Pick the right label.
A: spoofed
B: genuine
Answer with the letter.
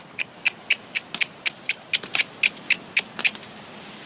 B